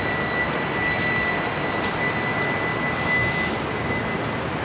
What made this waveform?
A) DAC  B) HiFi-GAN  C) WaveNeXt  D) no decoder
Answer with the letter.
D